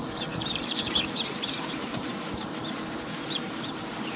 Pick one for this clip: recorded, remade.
remade